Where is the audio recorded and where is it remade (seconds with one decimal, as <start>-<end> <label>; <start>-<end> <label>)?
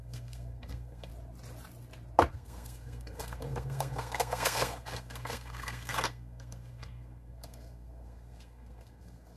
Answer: 0.0-1.1 remade; 1.1-2.3 recorded; 2.3-9.4 remade